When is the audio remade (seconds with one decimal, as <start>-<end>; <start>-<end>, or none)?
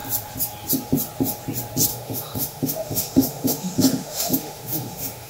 1.9-5.3